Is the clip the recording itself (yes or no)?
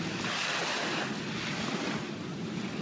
yes